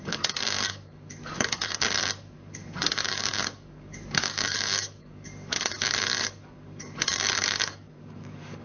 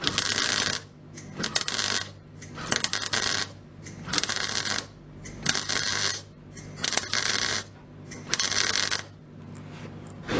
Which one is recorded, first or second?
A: second